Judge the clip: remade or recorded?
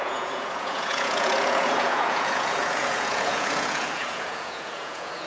remade